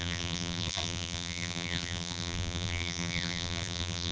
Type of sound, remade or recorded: remade